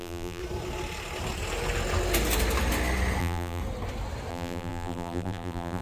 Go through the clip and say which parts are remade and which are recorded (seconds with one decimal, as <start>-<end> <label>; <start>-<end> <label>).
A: 0.0-0.4 remade; 0.4-3.2 recorded; 3.2-3.6 remade; 3.6-4.3 recorded; 4.3-5.8 remade